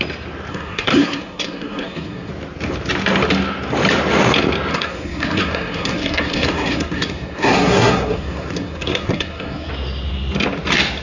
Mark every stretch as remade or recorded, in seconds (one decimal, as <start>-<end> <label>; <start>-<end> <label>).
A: 0.0-0.5 recorded; 0.5-2.3 remade; 2.3-4.7 recorded; 4.7-9.7 remade; 9.7-11.0 recorded